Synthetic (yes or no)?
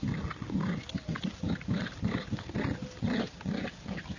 no